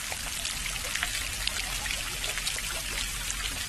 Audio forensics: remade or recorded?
recorded